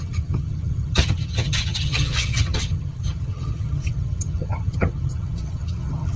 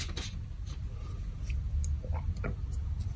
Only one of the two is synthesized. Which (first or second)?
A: first